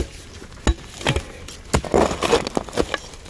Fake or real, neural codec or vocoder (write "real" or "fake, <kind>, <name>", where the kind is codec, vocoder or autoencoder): real